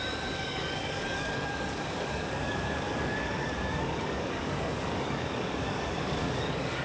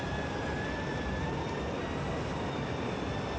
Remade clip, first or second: first